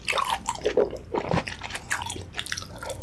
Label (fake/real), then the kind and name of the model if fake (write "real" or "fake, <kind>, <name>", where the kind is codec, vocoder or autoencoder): fake, vocoder, BigVGAN v2